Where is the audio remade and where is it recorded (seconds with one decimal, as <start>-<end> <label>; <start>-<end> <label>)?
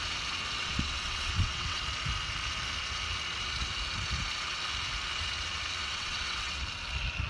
0.0-0.6 recorded; 0.6-1.8 remade; 1.8-5.8 recorded; 5.8-6.6 remade; 6.6-7.3 recorded